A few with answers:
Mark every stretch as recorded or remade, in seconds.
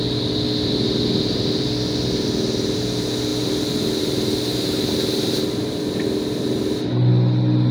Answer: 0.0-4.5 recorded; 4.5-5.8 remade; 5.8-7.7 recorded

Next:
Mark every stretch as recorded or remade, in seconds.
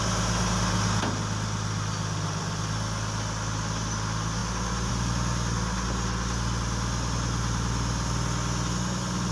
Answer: 0.0-9.3 recorded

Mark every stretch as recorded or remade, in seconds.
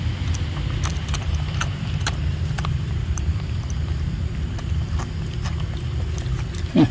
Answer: 0.0-0.9 recorded; 0.9-5.0 remade; 5.0-6.9 recorded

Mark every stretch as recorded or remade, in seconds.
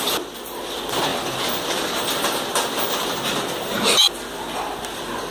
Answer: 0.0-5.3 recorded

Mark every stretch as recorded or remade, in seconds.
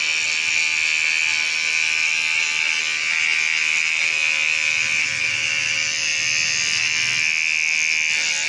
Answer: 0.0-8.5 recorded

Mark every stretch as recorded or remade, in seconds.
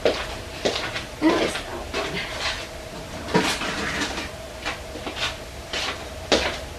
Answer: 0.0-6.8 recorded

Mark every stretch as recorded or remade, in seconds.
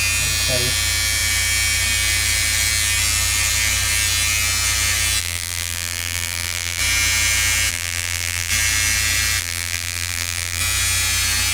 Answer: 0.0-5.2 recorded; 5.2-6.8 remade; 6.8-7.7 recorded; 7.7-8.5 remade; 8.5-9.4 recorded; 9.4-10.6 remade; 10.6-11.5 recorded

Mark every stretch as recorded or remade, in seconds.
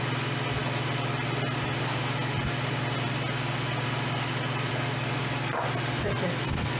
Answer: 0.0-6.8 recorded